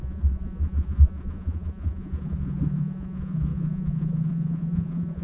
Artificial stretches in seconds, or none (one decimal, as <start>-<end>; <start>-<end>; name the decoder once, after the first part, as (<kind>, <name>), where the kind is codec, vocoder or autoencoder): 0.0-5.2 (vocoder, Vocos)